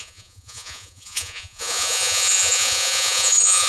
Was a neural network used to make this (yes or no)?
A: yes